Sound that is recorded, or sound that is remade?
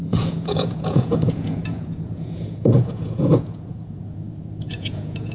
remade